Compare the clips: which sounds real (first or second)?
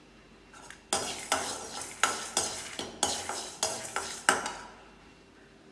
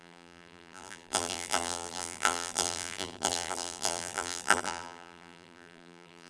first